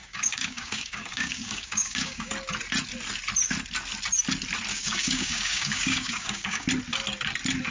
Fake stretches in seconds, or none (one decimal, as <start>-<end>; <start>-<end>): 0.0-2.3; 4.7-6.7